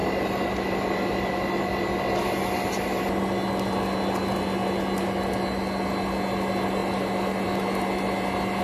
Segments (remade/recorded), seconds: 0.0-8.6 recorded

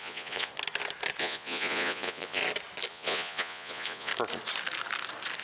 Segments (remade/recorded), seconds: 0.0-0.5 remade; 0.5-1.2 recorded; 1.2-2.4 remade; 2.4-2.9 recorded; 2.9-4.1 remade; 4.1-5.4 recorded

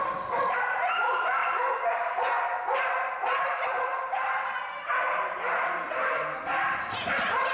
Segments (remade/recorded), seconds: 0.0-7.5 recorded

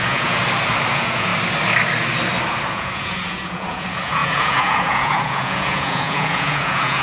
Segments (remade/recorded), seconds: 0.0-0.4 remade; 0.4-0.9 recorded; 0.9-1.3 remade; 1.3-2.7 recorded; 2.7-7.0 remade

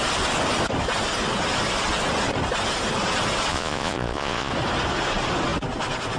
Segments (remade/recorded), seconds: 0.0-3.5 recorded; 3.5-4.5 remade; 4.5-6.2 recorded